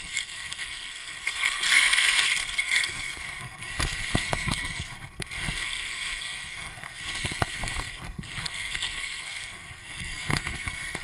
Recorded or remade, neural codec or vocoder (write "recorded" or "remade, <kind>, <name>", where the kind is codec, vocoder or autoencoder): remade, codec, SNAC